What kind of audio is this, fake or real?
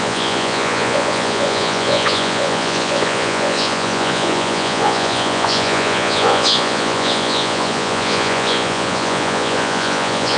fake